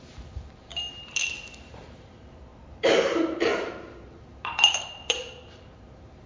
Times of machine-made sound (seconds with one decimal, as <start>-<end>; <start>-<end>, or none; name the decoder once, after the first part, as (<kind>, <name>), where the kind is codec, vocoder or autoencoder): 0.0-0.7 (vocoder, BigVGAN v2); 1.7-6.3